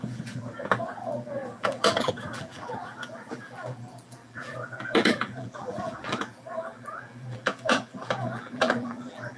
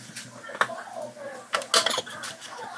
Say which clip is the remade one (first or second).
first